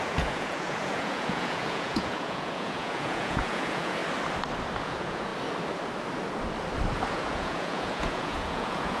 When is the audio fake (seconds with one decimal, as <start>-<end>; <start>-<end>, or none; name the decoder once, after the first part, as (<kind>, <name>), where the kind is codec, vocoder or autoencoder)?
0.0-4.0 (vocoder, Vocos); 4.8-5.3; 7.1-9.0